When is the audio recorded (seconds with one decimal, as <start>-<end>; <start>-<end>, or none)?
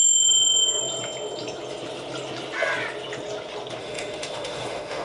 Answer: 0.8-3.8